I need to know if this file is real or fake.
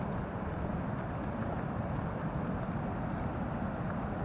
real